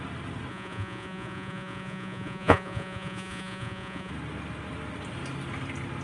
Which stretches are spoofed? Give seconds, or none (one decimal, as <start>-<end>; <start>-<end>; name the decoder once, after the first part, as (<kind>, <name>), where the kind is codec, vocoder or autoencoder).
0.5-4.1 (vocoder, Vocos)